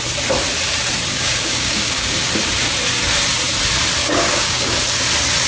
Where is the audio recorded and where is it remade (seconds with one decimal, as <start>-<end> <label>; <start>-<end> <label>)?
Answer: 0.0-1.1 recorded; 1.1-2.3 remade; 2.3-4.0 recorded; 4.0-4.7 remade; 4.7-5.5 recorded